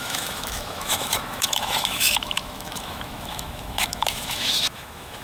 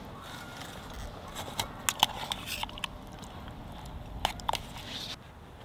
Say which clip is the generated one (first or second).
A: first